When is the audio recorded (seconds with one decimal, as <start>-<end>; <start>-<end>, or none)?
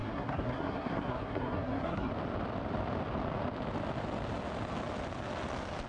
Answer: 2.1-5.9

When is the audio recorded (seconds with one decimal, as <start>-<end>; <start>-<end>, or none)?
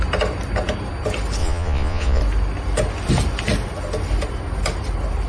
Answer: 0.0-1.4; 2.2-5.3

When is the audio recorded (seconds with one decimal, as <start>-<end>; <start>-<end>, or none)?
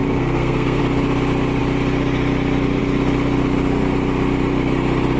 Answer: 0.8-5.2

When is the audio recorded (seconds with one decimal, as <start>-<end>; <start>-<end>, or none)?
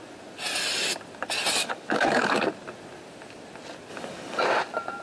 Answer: 0.0-1.6; 2.5-3.9; 4.4-5.0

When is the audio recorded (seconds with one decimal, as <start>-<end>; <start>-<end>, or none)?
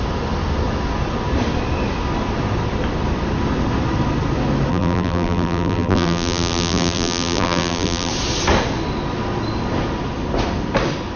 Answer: 0.0-4.7; 8.1-11.2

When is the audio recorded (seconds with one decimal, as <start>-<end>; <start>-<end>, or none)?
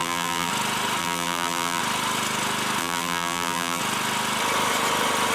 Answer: 0.5-1.0; 1.8-2.8; 3.8-5.3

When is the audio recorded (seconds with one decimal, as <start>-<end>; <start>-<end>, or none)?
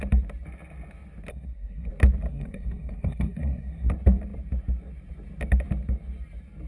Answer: 0.0-1.3; 1.9-2.3; 3.9-6.7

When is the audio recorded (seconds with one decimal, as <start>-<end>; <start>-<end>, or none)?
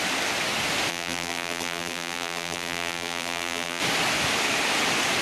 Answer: 0.0-0.9; 3.8-5.2